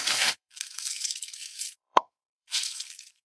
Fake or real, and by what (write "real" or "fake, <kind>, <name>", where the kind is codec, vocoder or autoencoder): fake, codec, SNAC